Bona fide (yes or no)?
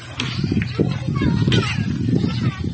yes